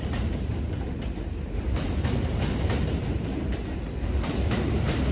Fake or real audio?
fake